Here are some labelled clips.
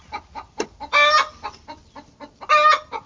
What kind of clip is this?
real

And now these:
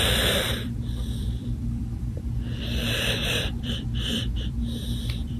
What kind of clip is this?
fake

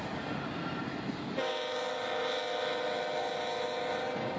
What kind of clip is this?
real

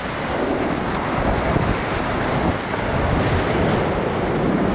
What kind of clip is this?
real